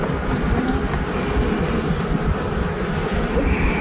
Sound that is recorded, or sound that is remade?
recorded